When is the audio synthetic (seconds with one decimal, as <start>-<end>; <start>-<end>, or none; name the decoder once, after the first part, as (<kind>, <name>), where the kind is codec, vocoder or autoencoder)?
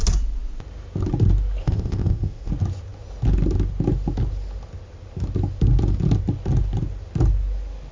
1.6-2.5 (codec, ZipCodec)